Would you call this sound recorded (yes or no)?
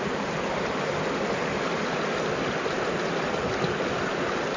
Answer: yes